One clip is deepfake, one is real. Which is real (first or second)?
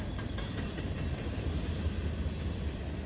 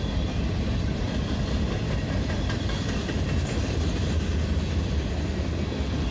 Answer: first